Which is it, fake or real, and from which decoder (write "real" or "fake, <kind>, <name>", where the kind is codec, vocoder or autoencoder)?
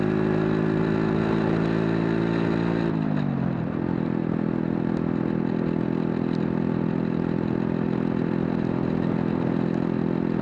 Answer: real